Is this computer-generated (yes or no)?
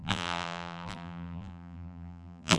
yes